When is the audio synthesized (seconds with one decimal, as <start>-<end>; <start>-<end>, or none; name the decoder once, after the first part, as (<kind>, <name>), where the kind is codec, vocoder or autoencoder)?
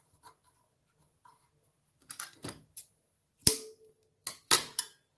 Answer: 2.0-5.2 (vocoder, BigVGAN v2)